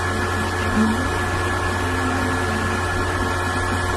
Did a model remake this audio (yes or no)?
no